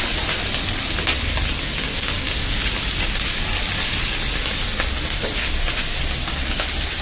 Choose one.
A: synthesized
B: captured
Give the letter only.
B